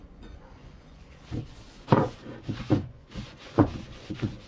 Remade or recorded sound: remade